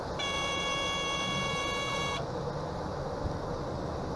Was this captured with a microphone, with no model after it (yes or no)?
yes